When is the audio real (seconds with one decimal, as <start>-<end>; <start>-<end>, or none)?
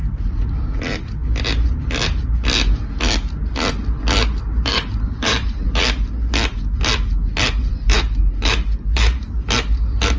0.6-4.5; 5.8-7.7; 9.3-10.2